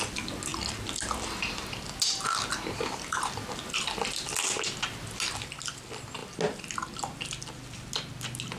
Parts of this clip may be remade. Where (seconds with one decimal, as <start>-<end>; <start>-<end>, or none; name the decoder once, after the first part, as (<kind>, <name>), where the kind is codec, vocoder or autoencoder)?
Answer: none